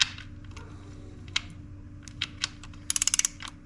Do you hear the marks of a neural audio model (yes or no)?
no